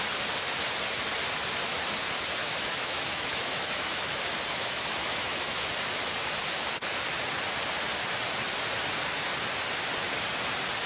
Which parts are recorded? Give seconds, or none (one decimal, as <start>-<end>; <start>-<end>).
0.0-2.4; 3.9-4.5; 5.7-10.9